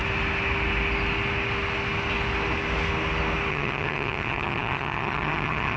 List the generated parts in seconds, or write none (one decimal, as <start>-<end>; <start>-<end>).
3.5-5.8